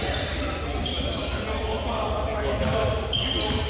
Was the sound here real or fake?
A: real